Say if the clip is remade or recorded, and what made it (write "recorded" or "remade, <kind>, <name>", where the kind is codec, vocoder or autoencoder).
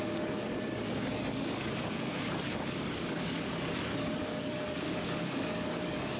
remade, codec, DAC